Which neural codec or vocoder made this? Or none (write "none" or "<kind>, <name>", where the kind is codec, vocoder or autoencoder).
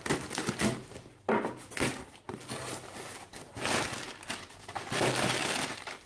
none